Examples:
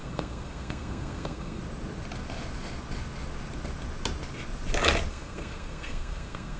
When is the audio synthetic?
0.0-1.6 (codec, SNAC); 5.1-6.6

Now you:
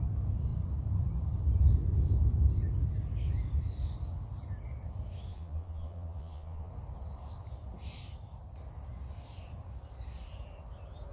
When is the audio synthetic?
5.3-6.7 (vocoder, Vocos)

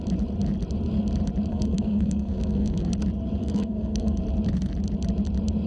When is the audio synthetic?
1.5-2.9 (codec, SNAC); 3.4-4.2